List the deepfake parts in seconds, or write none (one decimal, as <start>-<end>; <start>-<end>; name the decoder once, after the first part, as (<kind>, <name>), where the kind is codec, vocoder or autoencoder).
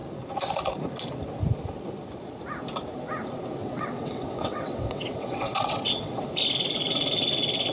3.6-6.2 (vocoder, WaveNeXt)